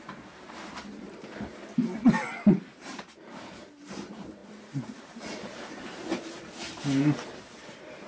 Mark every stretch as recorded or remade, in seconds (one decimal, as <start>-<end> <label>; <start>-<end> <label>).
0.0-1.6 remade; 1.6-2.6 recorded; 2.6-8.1 remade